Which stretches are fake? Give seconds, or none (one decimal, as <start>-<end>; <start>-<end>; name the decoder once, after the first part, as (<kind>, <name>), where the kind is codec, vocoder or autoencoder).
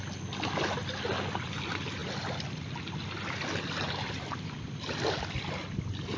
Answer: none